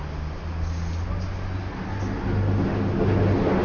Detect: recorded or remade recorded